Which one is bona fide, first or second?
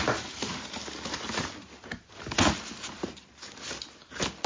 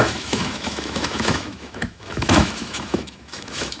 first